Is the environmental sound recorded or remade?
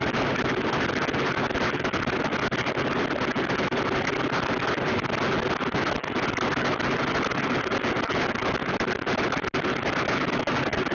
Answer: recorded